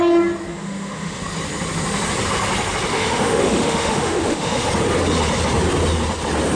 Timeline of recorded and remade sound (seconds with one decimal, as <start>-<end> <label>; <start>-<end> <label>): 0.0-0.5 recorded; 0.5-1.2 remade; 1.2-2.9 recorded; 2.9-4.7 remade; 4.7-6.6 recorded

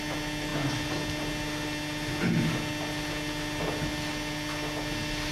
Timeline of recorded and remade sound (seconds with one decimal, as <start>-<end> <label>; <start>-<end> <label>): 0.0-5.3 recorded